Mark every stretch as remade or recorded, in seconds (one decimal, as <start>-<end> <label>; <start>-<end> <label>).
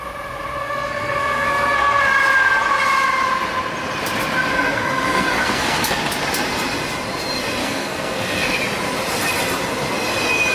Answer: 0.0-0.6 recorded; 0.6-2.0 remade; 2.0-4.5 recorded; 4.5-6.0 remade; 6.0-7.6 recorded; 7.6-8.6 remade; 8.6-10.5 recorded